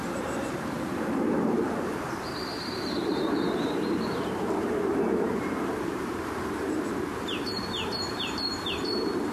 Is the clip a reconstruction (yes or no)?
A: yes